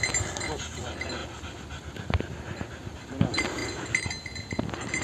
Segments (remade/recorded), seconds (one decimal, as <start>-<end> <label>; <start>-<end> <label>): 0.0-5.0 recorded